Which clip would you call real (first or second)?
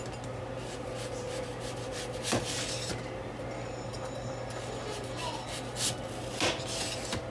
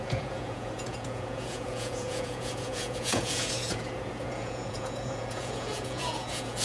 first